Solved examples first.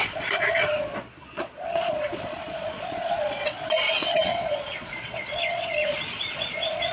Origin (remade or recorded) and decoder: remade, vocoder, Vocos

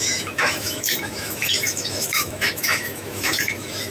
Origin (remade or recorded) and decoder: remade, autoencoder, DAC-VAE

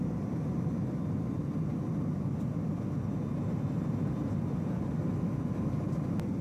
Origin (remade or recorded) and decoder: recorded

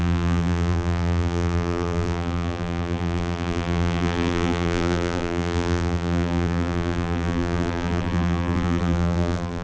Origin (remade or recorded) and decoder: remade, vocoder, BigVGAN v2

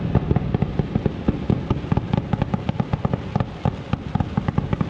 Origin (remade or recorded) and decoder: recorded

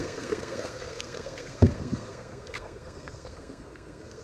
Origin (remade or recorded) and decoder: remade, codec, SNAC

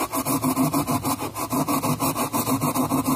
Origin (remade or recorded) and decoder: recorded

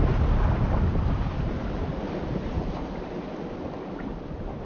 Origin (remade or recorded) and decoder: recorded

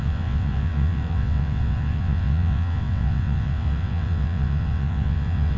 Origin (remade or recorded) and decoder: remade, vocoder, WaveNeXt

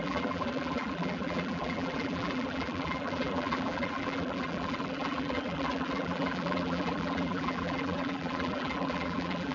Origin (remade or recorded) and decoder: remade, vocoder, BigVGAN v2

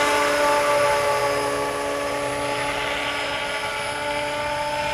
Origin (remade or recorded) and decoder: recorded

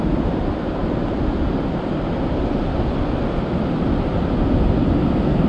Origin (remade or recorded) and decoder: recorded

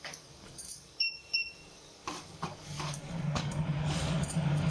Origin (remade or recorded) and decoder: remade, codec, DAC